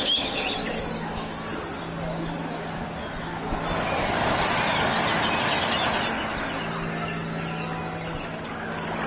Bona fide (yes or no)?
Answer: yes